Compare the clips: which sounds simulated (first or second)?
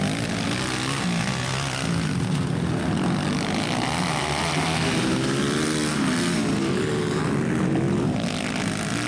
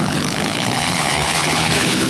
second